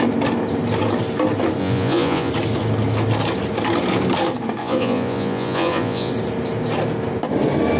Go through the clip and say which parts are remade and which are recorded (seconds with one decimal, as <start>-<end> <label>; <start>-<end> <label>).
0.0-1.6 recorded; 1.6-2.3 remade; 2.3-4.6 recorded; 4.6-6.1 remade; 6.1-7.8 recorded